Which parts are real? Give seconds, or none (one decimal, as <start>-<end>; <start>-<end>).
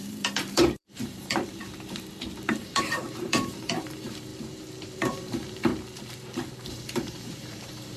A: 1.6-2.5; 4.3-5.0; 5.7-6.7